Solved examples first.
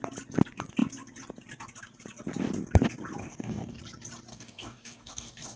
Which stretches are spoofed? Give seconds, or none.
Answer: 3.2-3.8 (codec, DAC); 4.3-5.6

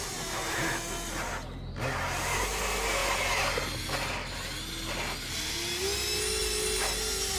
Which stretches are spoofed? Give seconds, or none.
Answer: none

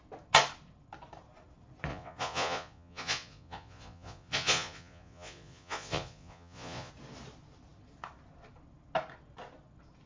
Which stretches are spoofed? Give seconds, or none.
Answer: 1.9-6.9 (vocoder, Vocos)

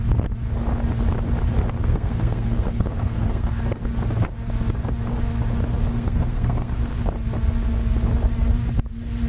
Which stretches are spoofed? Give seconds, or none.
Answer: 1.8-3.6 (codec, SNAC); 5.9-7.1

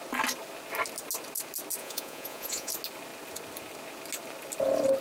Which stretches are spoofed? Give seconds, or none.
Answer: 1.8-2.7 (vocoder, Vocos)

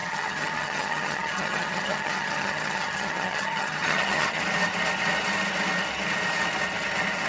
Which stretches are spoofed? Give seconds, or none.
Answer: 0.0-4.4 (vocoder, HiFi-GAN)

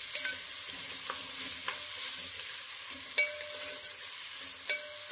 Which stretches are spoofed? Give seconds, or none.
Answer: none